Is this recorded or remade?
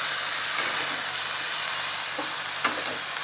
recorded